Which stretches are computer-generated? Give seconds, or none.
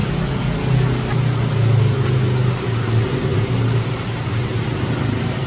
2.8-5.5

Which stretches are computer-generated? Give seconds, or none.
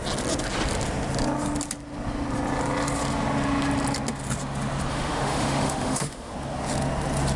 4.9-6.3